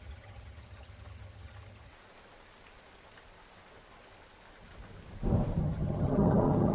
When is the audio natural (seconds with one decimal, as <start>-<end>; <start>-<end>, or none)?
1.9-5.6